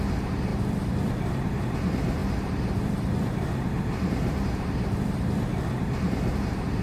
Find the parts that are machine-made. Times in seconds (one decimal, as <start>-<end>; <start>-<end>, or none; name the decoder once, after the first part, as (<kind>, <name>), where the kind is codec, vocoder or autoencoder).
0.0-0.5 (vocoder, BigVGAN v2); 1.3-6.8